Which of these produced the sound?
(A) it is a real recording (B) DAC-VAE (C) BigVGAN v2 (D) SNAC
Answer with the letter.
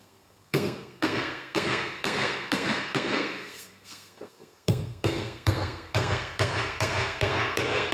D